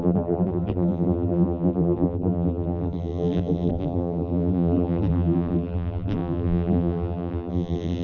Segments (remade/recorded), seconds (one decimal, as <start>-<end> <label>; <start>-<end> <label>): 0.0-8.0 remade